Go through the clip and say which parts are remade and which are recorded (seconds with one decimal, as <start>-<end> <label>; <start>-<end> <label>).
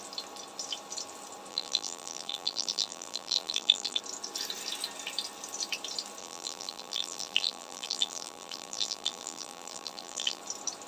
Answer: 0.0-1.5 recorded; 1.5-4.0 remade; 4.0-6.2 recorded; 6.2-10.4 remade; 10.4-10.9 recorded